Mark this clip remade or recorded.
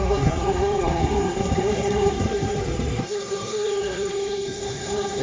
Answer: remade